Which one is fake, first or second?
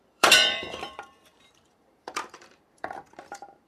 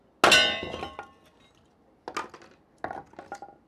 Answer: first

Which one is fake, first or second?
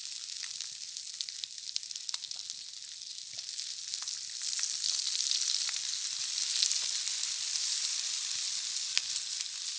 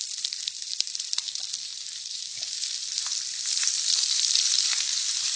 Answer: second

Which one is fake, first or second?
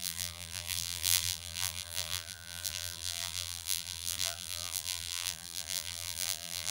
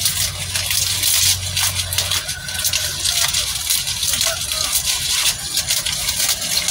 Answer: first